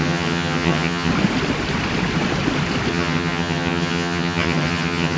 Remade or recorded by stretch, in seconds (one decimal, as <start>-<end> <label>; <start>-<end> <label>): 0.0-1.1 remade; 1.1-2.9 recorded; 2.9-5.2 remade